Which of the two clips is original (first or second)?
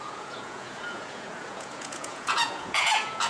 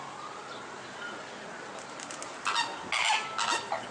second